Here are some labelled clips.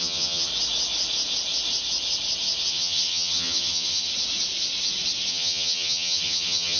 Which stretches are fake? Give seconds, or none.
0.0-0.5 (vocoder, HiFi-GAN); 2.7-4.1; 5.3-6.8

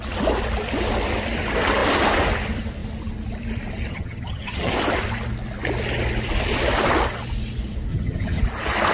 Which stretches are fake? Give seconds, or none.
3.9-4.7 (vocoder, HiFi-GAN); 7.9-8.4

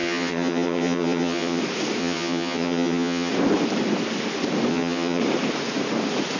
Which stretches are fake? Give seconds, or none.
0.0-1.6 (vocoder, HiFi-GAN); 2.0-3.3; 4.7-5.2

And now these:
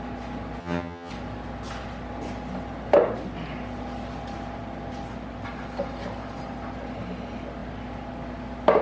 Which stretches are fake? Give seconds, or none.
0.6-1.1 (vocoder, HiFi-GAN)